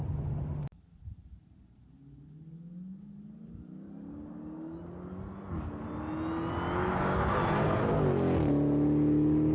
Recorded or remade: recorded